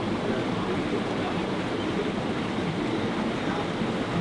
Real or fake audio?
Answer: real